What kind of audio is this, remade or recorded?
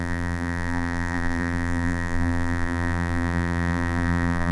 remade